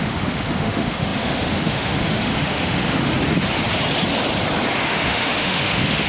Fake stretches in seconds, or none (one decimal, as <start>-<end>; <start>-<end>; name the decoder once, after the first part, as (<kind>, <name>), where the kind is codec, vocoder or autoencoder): 0.0-3.1 (autoencoder, DAC-VAE); 4.8-6.1